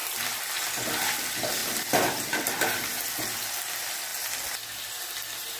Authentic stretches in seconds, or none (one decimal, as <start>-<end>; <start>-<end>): 0.6-1.6; 2.9-5.6